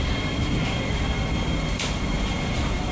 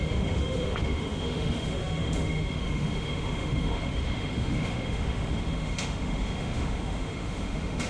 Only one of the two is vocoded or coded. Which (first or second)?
second